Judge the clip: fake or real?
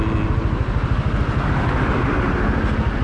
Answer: real